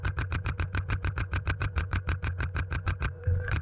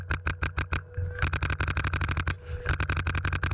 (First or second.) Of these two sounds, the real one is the second